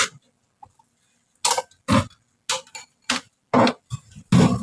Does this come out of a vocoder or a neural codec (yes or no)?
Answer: no